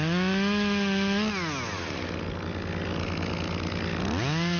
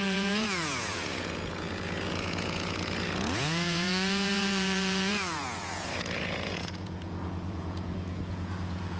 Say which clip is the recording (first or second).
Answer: first